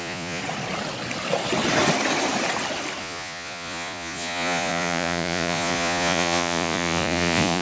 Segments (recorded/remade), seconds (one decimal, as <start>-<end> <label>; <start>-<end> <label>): 0.0-0.4 remade; 0.4-3.0 recorded; 3.0-7.6 remade